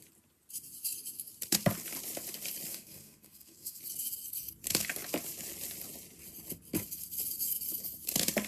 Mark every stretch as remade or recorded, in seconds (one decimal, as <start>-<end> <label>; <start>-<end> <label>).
0.0-2.7 recorded; 2.7-3.8 remade; 3.8-8.5 recorded